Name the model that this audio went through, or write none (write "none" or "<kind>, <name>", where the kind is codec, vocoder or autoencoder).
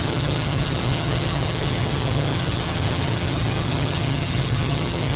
vocoder, HiFi-GAN